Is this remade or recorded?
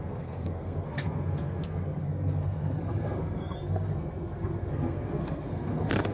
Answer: remade